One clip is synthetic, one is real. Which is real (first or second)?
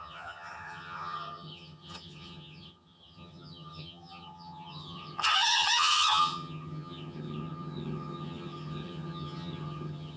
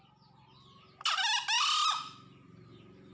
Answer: second